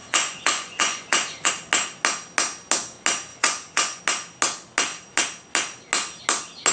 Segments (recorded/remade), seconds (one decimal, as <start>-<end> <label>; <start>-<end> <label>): 0.0-1.5 remade; 1.5-3.3 recorded; 3.3-4.0 remade; 4.0-6.7 recorded